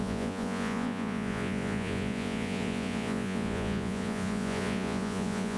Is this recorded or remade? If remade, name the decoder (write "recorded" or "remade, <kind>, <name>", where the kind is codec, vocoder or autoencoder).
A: remade, vocoder, Vocos